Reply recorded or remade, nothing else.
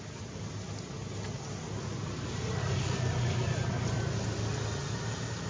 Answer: recorded